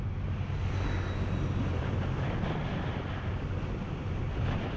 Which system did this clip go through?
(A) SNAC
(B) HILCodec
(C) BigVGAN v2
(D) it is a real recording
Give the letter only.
D